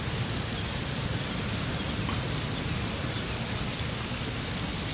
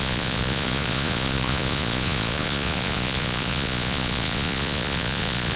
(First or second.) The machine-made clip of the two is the second